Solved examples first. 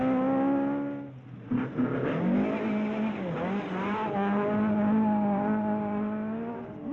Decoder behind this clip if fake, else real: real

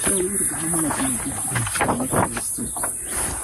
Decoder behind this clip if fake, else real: real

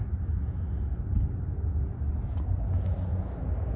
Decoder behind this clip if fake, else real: real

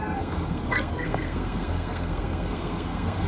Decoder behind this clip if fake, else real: fake, codec, SNAC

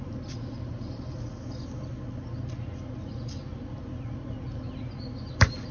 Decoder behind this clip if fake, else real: real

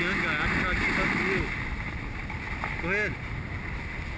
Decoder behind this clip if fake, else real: real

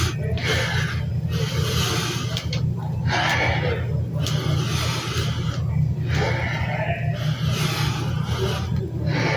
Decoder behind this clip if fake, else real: real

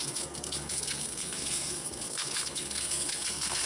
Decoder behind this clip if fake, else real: fake, codec, SNAC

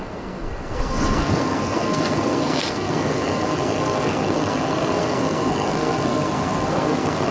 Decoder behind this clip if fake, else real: fake, codec, SNAC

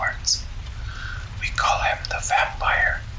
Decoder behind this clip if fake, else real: real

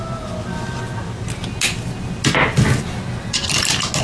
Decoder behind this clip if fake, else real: real